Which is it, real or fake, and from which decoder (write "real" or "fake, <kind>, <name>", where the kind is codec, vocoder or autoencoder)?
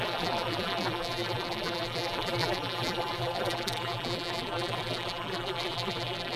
fake, vocoder, BigVGAN v2